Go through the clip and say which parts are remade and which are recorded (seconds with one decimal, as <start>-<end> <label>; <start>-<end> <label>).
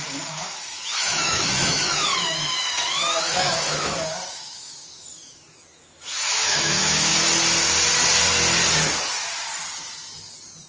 0.0-7.1 remade; 7.1-10.7 recorded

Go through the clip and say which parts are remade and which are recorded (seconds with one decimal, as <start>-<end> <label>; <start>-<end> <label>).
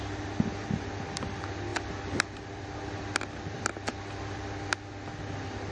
0.0-5.7 recorded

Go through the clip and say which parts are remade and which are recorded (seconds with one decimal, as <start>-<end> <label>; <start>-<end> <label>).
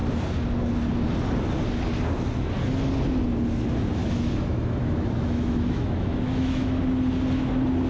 0.0-4.0 recorded; 4.0-6.8 remade; 6.8-7.9 recorded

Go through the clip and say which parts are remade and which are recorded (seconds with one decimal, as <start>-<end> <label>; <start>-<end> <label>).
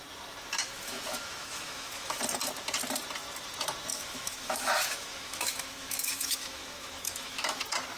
0.0-0.6 recorded; 0.6-2.2 remade; 2.2-3.9 recorded; 3.9-7.6 remade; 7.6-8.0 recorded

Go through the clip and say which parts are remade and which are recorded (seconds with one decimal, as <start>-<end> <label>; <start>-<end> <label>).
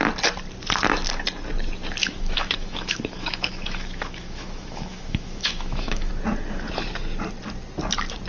0.0-2.0 recorded; 2.0-6.1 remade; 6.1-8.3 recorded